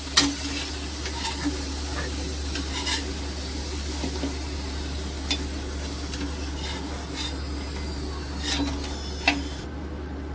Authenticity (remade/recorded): recorded